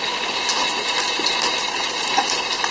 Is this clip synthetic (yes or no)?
no